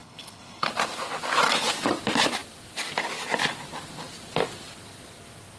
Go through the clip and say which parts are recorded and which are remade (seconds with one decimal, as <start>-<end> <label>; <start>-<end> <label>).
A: 0.0-0.7 remade; 0.7-5.6 recorded